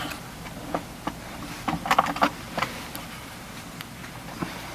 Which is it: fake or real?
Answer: fake